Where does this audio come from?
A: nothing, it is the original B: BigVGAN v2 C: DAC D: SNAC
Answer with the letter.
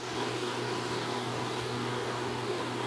C